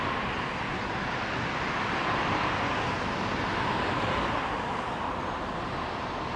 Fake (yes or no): no